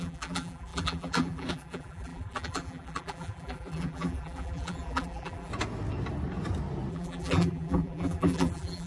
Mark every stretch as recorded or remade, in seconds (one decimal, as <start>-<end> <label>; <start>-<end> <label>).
0.0-5.5 remade; 5.5-6.9 recorded; 6.9-8.9 remade